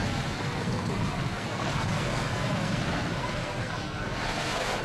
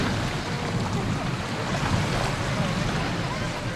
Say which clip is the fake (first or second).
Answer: first